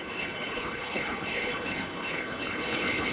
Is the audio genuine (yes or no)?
no